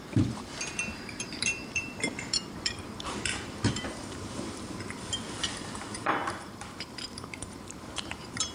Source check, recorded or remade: remade